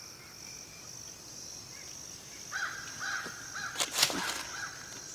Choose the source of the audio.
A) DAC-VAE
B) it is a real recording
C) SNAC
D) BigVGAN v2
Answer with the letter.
B